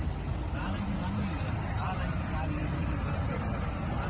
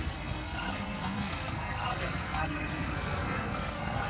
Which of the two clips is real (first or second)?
first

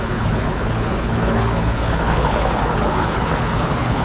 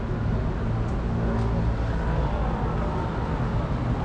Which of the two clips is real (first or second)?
second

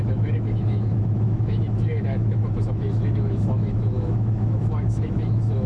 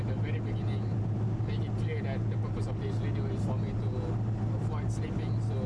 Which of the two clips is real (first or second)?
second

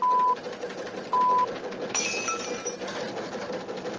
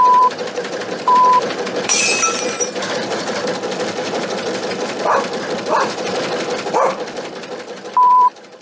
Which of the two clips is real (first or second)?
first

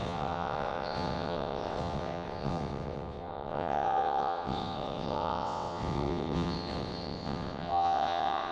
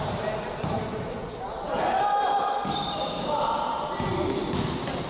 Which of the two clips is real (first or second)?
second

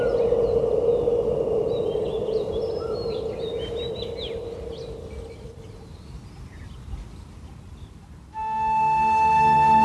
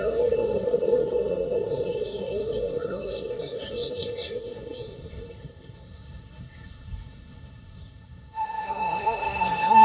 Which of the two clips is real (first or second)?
first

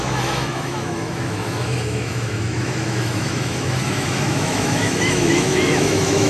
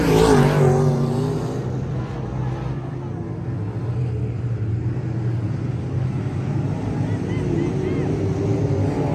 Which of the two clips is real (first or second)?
second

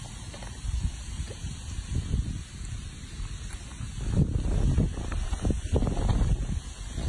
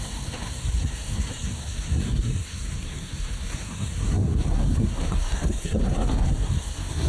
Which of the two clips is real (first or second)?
first